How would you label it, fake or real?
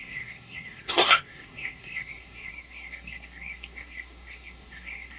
fake